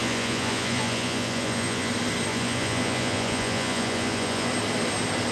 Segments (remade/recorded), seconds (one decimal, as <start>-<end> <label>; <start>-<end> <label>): 0.0-1.9 remade; 1.9-2.3 recorded; 2.3-4.5 remade; 4.5-5.3 recorded

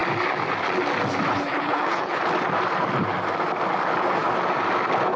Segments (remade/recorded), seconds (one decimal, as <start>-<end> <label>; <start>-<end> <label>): 0.0-1.3 recorded; 1.3-2.2 remade; 2.2-5.2 recorded

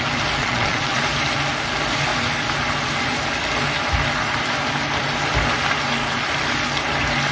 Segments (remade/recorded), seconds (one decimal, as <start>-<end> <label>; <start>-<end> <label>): 0.0-0.4 recorded; 0.4-1.0 remade; 1.0-7.3 recorded

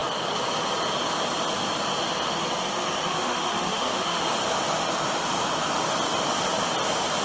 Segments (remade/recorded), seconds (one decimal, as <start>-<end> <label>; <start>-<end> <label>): 0.0-3.1 recorded; 3.1-4.3 remade; 4.3-7.2 recorded

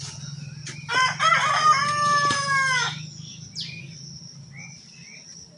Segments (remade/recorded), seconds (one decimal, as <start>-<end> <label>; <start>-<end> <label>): 0.0-5.6 recorded

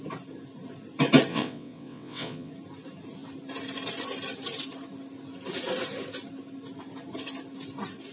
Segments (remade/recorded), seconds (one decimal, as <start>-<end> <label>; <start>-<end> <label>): 0.0-1.3 recorded; 1.3-2.5 remade; 2.5-8.1 recorded

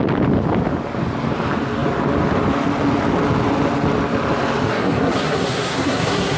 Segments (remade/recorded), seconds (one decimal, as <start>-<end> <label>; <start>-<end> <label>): 0.0-4.7 recorded; 4.7-6.4 remade